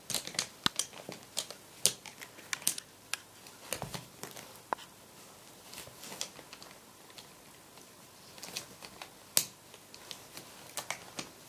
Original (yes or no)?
yes